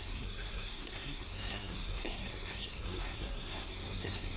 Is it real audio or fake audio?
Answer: fake